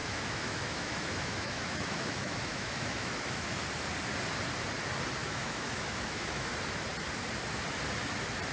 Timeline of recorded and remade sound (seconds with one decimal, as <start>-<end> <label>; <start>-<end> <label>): 0.0-3.6 remade; 3.6-5.2 recorded; 5.2-6.5 remade; 6.5-8.5 recorded